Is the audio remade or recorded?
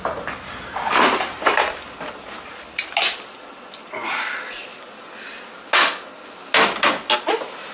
recorded